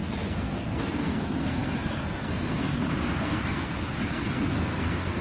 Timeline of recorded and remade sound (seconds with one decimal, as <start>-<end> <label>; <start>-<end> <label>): 0.0-5.2 remade

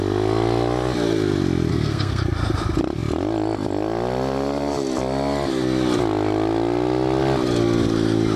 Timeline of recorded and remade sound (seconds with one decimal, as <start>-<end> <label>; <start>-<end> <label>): 0.0-1.7 recorded; 1.7-2.2 remade; 2.2-8.4 recorded

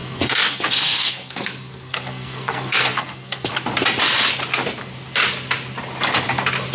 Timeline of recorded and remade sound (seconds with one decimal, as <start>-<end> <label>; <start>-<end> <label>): 0.0-3.5 remade; 3.5-6.7 recorded

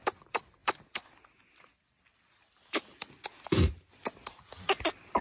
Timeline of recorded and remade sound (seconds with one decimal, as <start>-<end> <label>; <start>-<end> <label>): 0.0-5.2 recorded